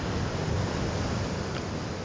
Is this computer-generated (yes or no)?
no